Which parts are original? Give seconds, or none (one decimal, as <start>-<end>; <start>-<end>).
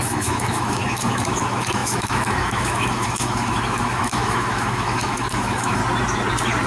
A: 5.8-6.7